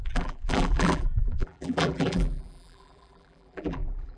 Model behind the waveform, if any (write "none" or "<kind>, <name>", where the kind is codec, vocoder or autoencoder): vocoder, BigVGAN v2